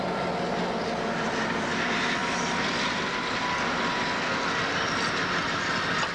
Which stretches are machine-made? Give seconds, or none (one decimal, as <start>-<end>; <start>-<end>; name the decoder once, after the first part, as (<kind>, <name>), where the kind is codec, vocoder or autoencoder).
none